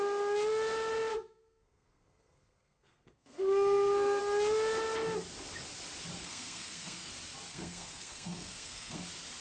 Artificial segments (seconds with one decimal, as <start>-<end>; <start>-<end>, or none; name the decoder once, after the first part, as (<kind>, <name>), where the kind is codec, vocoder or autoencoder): 1.1-4.2 (codec, SNAC); 6.2-7.1; 7.5-9.0